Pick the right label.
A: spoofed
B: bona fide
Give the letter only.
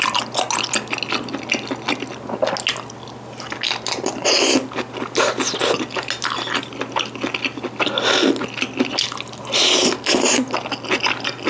B